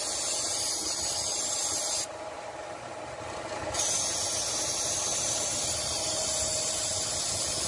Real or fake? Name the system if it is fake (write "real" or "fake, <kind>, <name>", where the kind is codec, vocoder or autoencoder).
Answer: real